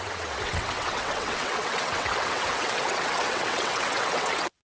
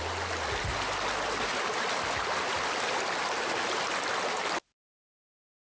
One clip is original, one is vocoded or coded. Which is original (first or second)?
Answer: second